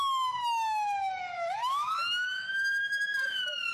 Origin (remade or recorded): remade